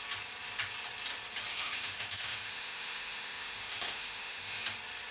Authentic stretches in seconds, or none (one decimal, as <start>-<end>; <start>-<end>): 0.0-1.5; 4.6-5.1